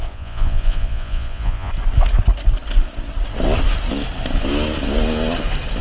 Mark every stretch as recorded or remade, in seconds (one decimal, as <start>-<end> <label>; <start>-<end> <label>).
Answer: 0.0-1.7 remade; 1.7-5.8 recorded